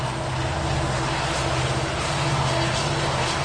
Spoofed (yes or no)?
no